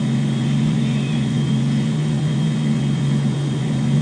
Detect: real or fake fake